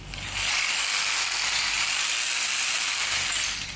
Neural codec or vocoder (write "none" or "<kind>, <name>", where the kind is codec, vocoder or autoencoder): none